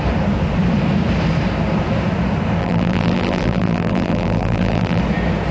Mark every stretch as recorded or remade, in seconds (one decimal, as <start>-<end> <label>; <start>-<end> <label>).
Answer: 0.0-2.6 recorded; 2.6-5.0 remade; 5.0-5.5 recorded